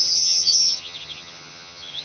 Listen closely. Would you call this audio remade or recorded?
remade